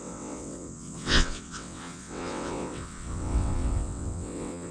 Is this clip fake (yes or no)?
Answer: yes